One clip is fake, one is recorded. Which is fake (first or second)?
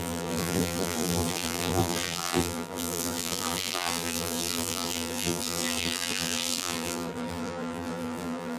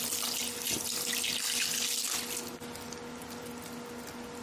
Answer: first